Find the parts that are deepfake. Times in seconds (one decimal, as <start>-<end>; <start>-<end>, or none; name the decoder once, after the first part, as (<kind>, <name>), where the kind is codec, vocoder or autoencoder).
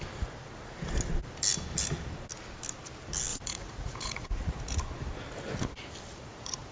3.3-4.8 (vocoder, Vocos); 6.1-6.7